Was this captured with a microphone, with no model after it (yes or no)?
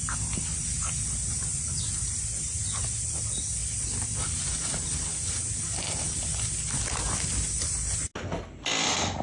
yes